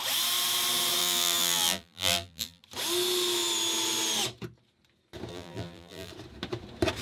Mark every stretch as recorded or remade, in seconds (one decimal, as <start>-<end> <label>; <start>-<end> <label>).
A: 0.0-1.0 recorded; 1.0-2.6 remade; 2.6-5.3 recorded; 5.3-6.1 remade; 6.1-7.0 recorded